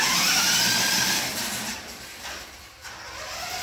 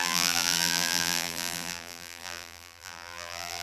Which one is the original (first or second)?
first